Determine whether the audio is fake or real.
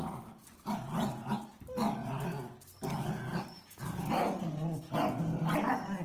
real